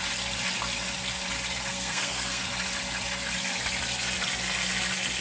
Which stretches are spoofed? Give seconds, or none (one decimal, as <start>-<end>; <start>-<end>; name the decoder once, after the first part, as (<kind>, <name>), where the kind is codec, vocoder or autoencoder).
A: 1.7-2.4 (codec, SNAC)